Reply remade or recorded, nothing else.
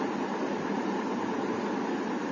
recorded